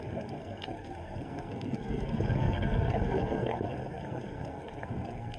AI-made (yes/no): yes